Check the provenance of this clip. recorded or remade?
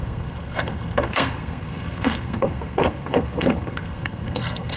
remade